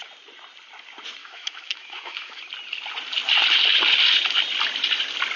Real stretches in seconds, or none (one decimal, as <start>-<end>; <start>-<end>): 0.0-1.2; 2.4-5.4